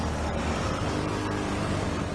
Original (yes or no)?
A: no